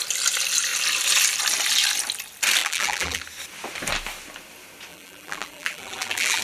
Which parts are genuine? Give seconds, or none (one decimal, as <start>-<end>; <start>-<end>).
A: 0.0-2.6; 3.2-4.9